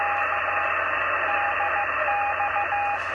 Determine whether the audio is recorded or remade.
recorded